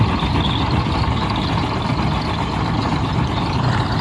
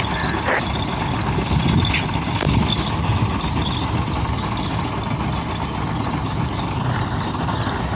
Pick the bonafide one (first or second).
second